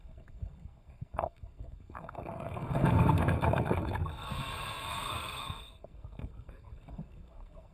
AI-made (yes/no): yes